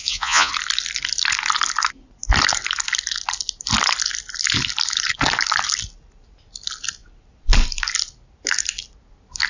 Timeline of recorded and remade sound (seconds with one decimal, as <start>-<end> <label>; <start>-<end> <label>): 0.0-0.5 remade; 0.5-9.5 recorded